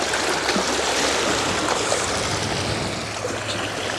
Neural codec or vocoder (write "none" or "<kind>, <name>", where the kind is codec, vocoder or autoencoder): none